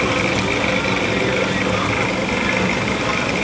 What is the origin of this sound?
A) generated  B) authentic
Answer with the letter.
B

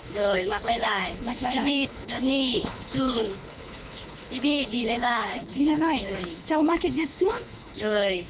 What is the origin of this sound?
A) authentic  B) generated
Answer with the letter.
B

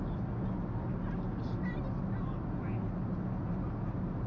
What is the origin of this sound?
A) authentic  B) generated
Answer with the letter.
A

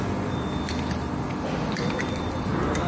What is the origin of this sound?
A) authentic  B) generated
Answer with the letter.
A